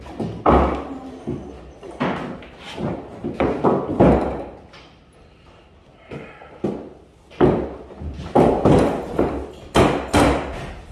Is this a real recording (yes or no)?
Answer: yes